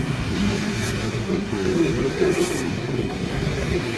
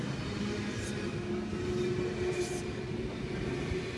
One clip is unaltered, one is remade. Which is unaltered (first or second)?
second